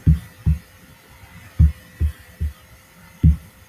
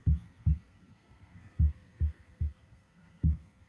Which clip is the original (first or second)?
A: first